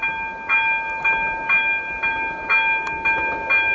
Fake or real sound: real